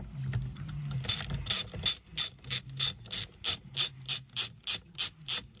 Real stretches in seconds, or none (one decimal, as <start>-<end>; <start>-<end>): 0.0-5.6